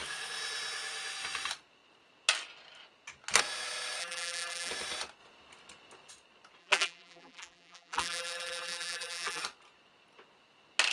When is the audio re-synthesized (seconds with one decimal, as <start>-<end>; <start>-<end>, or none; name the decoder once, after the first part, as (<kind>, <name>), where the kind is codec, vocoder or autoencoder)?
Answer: 4.0-4.7 (vocoder, BigVGAN v2); 6.6-9.4